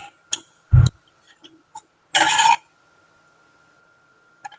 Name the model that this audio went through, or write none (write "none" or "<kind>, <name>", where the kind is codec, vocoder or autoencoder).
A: none